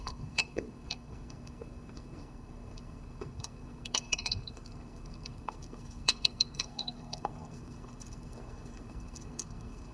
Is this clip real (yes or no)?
no